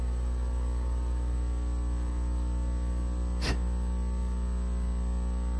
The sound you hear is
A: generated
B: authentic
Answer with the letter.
B